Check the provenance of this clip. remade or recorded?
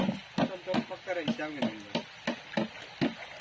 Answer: recorded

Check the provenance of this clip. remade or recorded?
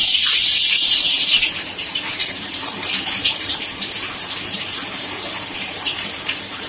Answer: remade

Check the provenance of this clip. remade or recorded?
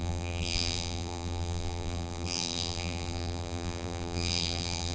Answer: remade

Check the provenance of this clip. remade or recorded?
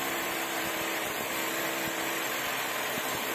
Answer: remade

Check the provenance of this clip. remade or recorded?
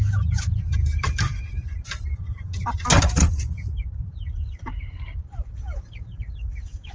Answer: remade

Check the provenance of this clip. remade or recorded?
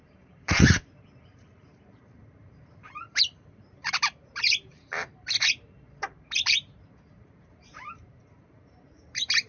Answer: remade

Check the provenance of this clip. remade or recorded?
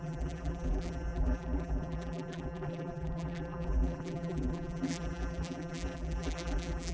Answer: remade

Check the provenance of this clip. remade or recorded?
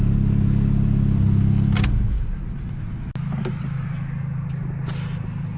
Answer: recorded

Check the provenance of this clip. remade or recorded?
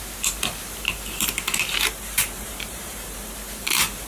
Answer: remade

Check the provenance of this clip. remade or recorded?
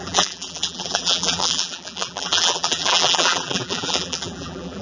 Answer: remade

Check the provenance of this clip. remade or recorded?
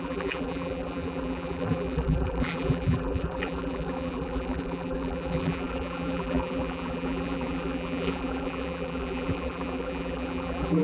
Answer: remade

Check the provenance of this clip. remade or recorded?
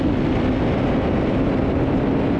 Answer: recorded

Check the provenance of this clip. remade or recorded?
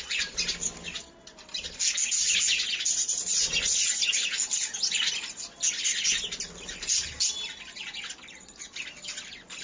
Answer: recorded